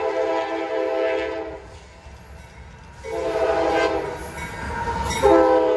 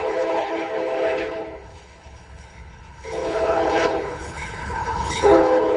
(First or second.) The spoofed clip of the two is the second